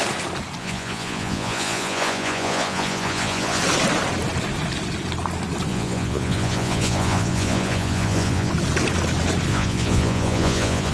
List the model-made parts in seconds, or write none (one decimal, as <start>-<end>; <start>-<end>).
0.6-3.6; 5.7-8.5; 9.5-10.9